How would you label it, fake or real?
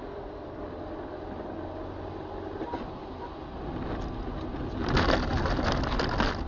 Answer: real